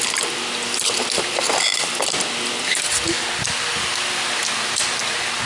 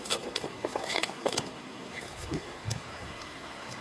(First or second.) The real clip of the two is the first